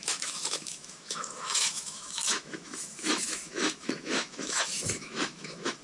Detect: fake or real fake